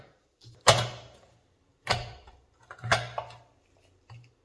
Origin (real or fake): fake